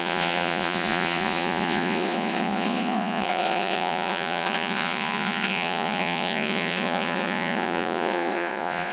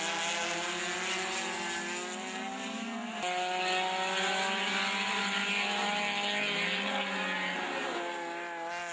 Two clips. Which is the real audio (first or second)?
second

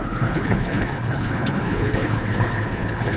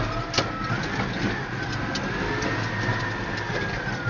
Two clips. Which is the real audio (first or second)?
second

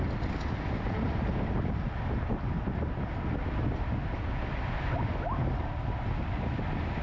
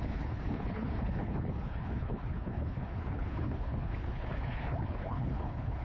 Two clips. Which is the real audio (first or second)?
first